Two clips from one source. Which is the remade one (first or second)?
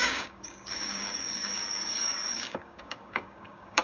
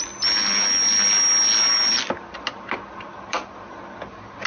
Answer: first